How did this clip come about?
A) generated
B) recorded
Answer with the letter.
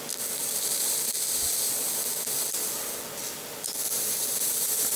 B